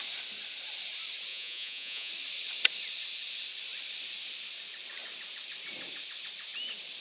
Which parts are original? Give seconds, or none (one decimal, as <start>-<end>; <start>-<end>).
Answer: 0.0-1.3; 2.1-7.0